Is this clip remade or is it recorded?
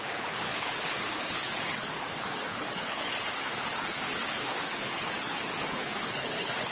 remade